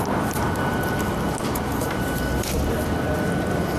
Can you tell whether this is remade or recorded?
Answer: recorded